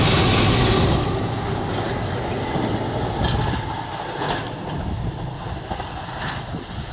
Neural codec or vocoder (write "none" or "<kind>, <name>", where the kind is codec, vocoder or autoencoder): none